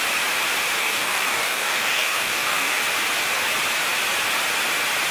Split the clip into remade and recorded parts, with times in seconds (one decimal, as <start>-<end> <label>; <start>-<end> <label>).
0.0-0.8 recorded; 0.8-2.8 remade; 2.8-5.1 recorded